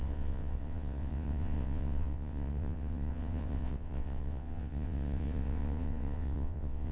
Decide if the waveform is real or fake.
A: fake